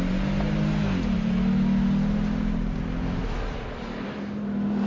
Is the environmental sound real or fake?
real